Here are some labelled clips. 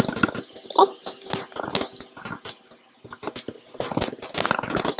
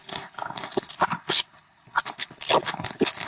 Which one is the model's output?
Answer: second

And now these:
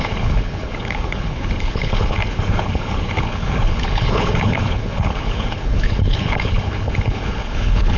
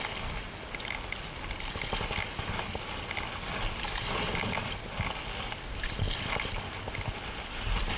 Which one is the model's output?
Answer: first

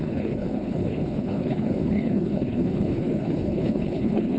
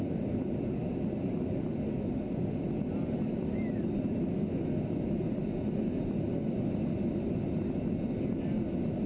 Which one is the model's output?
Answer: first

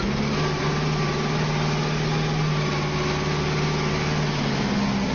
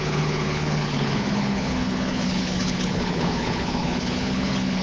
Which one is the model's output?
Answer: second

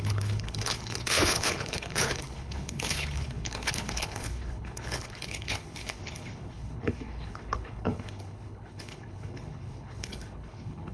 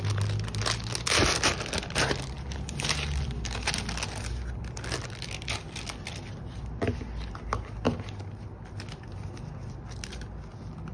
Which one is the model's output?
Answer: first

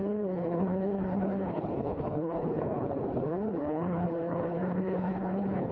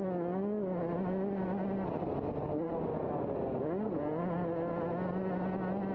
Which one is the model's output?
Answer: first